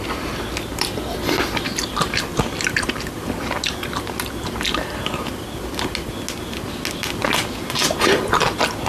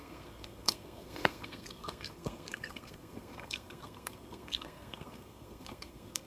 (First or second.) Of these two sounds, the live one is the first